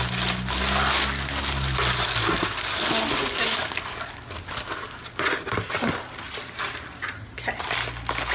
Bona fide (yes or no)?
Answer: yes